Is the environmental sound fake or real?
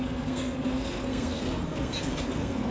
fake